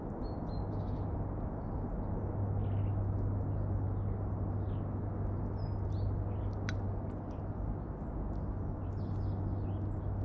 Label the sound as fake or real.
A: real